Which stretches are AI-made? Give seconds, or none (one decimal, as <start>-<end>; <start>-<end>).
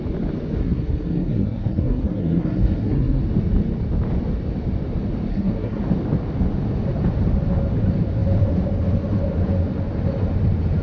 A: 0.6-3.2; 5.3-5.8